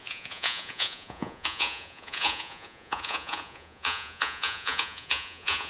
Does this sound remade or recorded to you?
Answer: remade